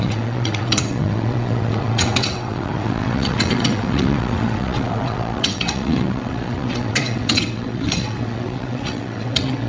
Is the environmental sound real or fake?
fake